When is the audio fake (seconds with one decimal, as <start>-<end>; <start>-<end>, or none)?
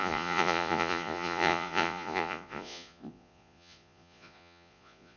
0.0-5.2